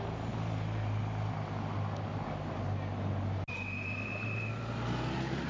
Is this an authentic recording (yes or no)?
yes